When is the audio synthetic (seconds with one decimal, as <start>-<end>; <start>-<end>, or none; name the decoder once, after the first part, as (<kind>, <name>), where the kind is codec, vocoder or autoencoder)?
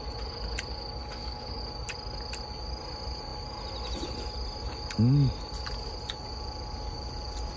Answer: 1.0-1.6 (codec, DAC)